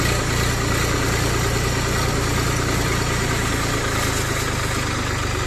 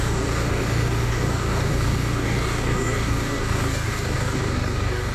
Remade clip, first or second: second